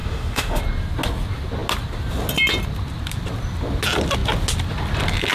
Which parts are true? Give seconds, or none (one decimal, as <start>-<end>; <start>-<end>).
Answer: 0.6-5.3